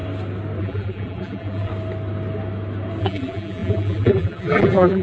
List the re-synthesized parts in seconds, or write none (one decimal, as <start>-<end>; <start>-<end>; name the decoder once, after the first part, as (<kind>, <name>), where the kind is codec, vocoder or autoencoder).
0.6-1.7 (vocoder, BigVGAN v2); 3.0-5.0